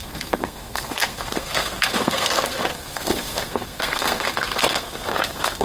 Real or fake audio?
fake